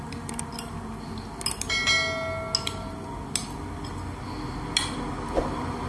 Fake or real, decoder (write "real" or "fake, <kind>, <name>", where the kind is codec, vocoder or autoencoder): real